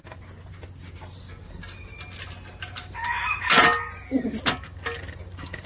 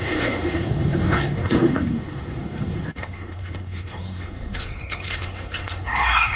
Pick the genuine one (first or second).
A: first